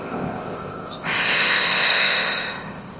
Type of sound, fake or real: fake